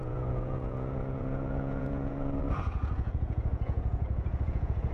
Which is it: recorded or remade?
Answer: remade